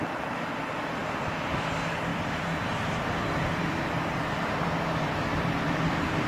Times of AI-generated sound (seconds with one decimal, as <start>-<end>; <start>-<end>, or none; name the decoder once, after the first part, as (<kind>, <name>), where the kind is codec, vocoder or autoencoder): 1.0-1.6 (vocoder, BigVGAN v2); 2.1-6.3